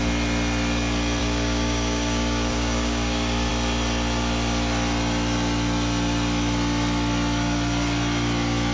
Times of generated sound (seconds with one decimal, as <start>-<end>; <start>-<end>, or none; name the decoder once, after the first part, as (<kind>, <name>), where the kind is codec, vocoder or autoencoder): 1.2-3.5 (codec, DAC)